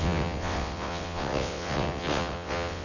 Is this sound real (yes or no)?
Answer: no